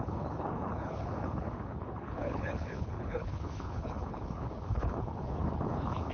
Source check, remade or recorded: remade